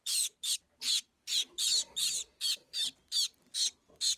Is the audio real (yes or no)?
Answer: no